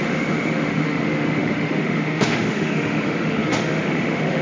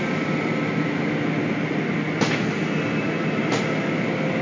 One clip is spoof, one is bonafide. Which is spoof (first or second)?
first